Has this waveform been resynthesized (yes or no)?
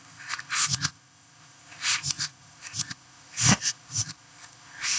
yes